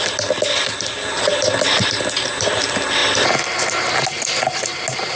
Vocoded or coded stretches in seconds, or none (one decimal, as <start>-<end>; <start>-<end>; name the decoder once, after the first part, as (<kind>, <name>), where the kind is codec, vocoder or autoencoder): none